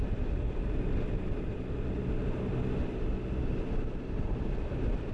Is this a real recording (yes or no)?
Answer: yes